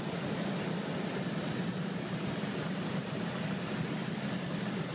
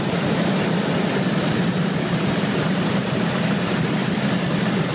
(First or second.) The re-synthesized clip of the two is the second